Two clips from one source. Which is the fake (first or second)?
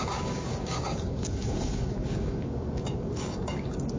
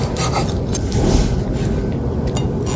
first